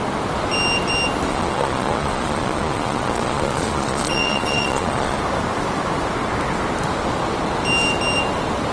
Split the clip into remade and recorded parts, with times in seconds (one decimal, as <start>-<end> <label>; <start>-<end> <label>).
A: 0.0-1.3 recorded; 1.3-5.2 remade; 5.2-8.7 recorded